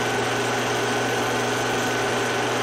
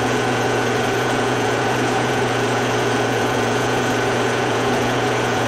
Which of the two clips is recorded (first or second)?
first